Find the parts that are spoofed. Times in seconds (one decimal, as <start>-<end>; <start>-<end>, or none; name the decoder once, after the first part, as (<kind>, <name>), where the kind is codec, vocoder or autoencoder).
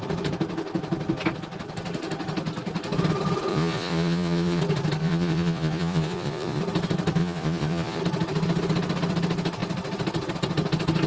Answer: 3.5-4.6 (vocoder, Vocos); 5.0-6.6; 7.2-8.0